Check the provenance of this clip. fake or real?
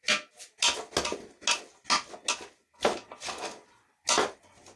real